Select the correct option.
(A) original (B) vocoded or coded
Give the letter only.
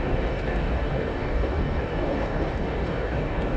B